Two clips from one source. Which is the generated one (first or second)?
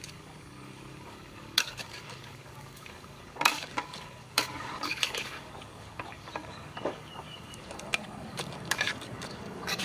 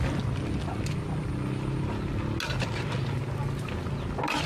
first